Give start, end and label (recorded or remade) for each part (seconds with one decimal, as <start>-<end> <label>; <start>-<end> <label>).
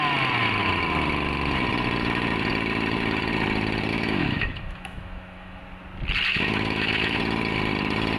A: 0.0-3.9 recorded; 3.9-5.6 remade; 5.6-6.3 recorded; 6.3-7.2 remade; 7.2-8.2 recorded